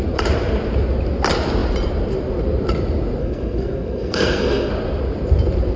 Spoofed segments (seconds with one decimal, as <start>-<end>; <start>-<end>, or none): 3.2-4.7